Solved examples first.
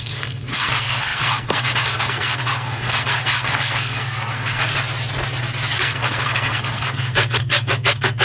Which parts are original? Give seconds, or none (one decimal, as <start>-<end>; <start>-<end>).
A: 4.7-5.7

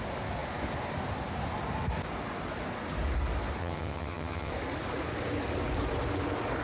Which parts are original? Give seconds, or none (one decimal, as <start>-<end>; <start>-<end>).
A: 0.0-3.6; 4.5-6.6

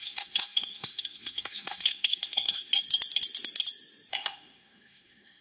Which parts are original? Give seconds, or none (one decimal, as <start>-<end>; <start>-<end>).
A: 2.7-4.1

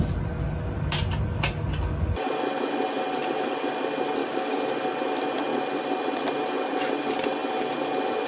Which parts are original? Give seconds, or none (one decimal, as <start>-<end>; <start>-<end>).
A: 0.0-4.2; 4.7-8.3

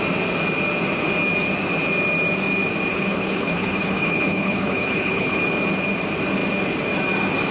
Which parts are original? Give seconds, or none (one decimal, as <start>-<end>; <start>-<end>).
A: 0.0-2.9; 5.4-7.5

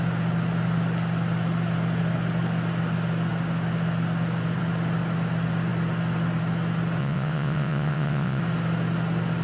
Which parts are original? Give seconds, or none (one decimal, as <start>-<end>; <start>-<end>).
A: 0.0-7.0; 8.4-9.4

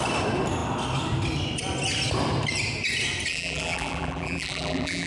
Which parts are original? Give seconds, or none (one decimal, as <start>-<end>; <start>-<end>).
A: 0.0-3.3